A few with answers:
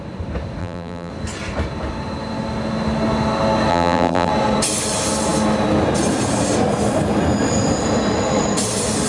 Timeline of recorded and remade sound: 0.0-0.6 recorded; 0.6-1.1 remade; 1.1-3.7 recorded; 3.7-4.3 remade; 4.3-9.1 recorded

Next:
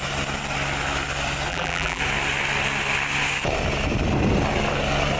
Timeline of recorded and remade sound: 0.0-1.5 recorded; 1.5-2.0 remade; 2.0-5.2 recorded

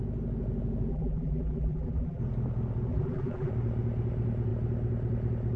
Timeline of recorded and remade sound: 0.0-0.9 recorded; 0.9-2.2 remade; 2.2-2.9 recorded; 2.9-3.5 remade; 3.5-5.6 recorded

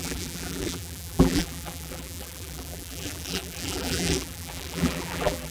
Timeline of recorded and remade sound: 0.0-5.5 remade

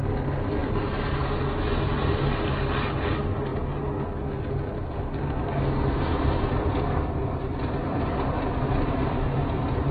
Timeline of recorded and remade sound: 0.0-6.1 recorded; 6.1-9.9 remade

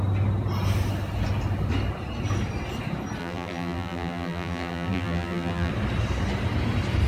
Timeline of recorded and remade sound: 0.0-3.2 recorded; 3.2-5.7 remade; 5.7-7.1 recorded